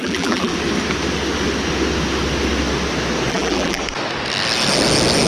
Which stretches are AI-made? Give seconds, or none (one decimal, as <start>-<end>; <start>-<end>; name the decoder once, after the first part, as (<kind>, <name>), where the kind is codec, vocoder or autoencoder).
0.0-0.5 (vocoder, BigVGAN v2); 3.3-3.8